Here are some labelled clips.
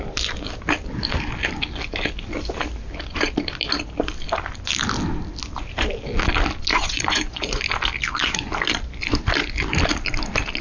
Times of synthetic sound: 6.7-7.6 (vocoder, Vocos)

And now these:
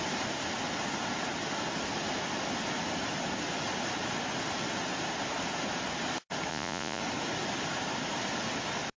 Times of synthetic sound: 6.5-7.0 (vocoder, Vocos)

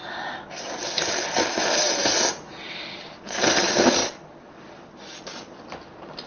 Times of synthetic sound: none

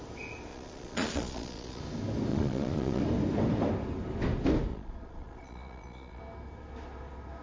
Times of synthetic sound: 0.5-1.8 (vocoder, Vocos); 2.3-3.0; 4.7-6.2

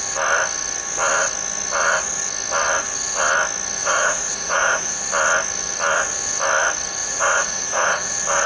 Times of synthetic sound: 3.8-5.0 (vocoder, Vocos); 7.0-8.1